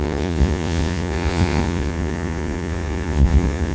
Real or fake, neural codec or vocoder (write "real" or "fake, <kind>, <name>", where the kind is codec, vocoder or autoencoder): fake, vocoder, Vocos